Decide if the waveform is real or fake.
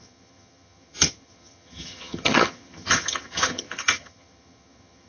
fake